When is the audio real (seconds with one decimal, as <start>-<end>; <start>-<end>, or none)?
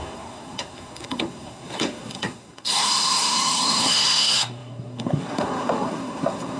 none